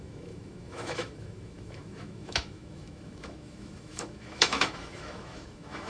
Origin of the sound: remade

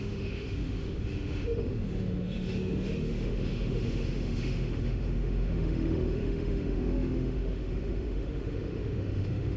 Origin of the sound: remade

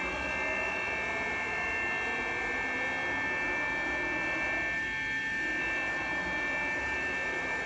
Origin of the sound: recorded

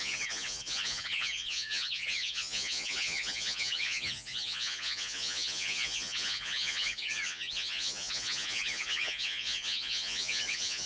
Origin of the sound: remade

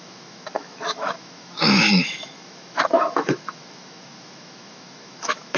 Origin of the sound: remade